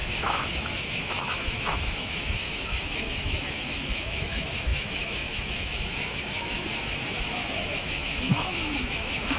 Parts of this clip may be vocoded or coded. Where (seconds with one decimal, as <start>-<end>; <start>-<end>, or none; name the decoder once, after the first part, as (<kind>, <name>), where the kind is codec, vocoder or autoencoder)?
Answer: 0.0-9.4 (autoencoder, DAC-VAE)